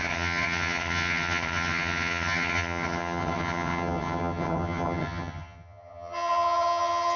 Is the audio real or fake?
fake